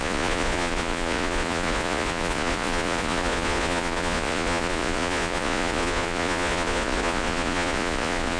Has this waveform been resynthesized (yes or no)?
yes